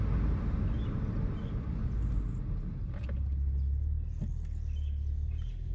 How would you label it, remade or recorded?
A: recorded